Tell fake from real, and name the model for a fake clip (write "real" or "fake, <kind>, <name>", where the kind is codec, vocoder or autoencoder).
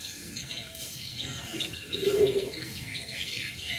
fake, codec, SNAC